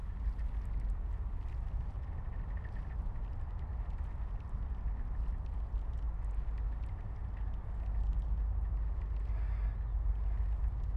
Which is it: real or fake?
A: real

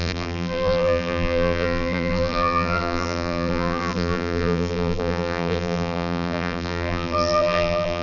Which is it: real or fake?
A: fake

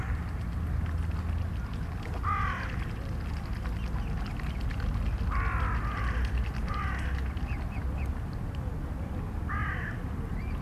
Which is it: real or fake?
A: real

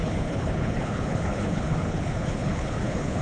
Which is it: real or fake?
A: fake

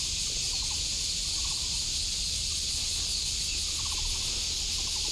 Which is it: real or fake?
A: real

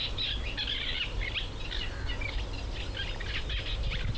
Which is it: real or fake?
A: real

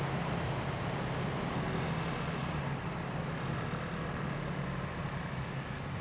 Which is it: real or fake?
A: real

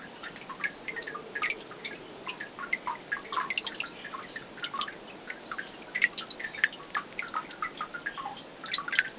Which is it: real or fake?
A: real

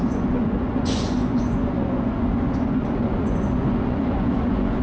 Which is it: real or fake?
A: fake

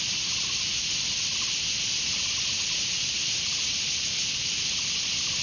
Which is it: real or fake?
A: real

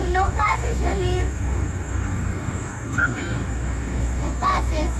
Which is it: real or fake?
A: fake